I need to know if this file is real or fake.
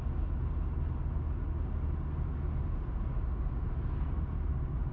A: real